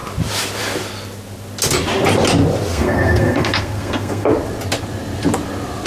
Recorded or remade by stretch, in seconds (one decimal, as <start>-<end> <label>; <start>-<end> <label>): 0.0-2.7 recorded; 2.7-4.3 remade; 4.3-5.9 recorded